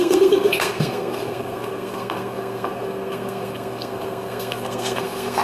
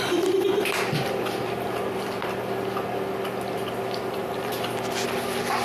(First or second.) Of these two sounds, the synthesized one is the first